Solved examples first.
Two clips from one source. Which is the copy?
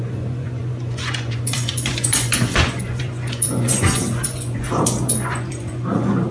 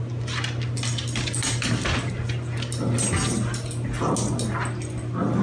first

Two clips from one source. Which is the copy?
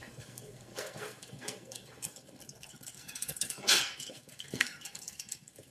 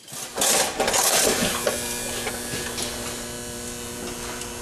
first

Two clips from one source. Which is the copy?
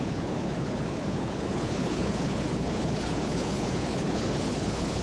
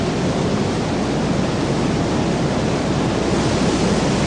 first